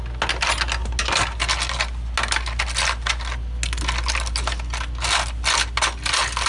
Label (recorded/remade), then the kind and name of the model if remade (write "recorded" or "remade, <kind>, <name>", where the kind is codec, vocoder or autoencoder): recorded